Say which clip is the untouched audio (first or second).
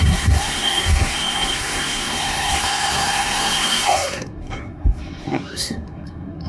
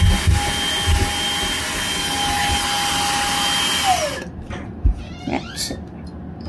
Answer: second